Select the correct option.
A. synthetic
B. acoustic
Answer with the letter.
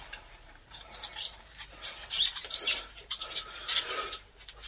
A